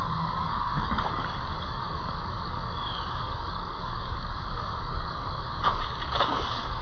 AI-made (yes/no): yes